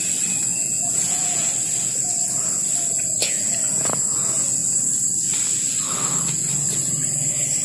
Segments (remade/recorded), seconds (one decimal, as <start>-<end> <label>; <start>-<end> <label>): 0.0-0.5 recorded; 0.5-1.5 remade; 1.5-3.2 recorded; 3.2-3.9 remade; 3.9-7.6 recorded